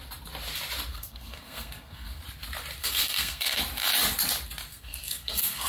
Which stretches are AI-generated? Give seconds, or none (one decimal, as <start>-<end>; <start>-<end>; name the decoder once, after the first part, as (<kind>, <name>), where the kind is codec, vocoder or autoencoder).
0.9-2.2 (codec, SNAC); 2.8-3.6; 4.7-5.7